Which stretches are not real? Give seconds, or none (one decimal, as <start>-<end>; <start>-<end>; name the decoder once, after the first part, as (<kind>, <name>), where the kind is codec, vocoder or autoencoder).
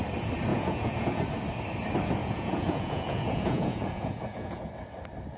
0.5-1.2 (vocoder, Vocos); 2.2-4.7